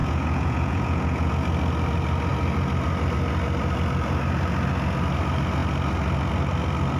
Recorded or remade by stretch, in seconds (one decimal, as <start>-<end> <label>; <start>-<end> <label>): 0.0-1.3 remade; 1.3-7.0 recorded